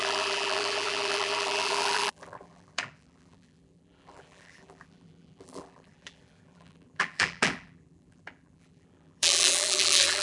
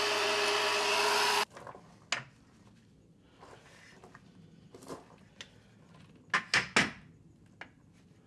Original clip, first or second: second